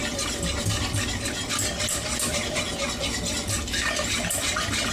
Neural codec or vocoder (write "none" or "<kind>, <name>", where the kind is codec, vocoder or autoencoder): none